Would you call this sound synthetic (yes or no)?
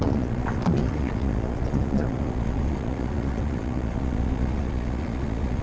yes